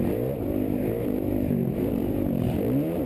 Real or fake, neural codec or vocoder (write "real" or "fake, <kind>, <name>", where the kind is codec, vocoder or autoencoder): fake, vocoder, BigVGAN v2